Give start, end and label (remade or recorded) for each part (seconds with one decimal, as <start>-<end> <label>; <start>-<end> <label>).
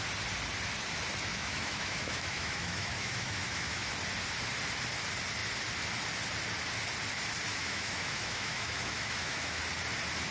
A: 0.0-1.3 recorded; 1.3-3.9 remade; 3.9-7.5 recorded; 7.5-9.6 remade; 9.6-10.3 recorded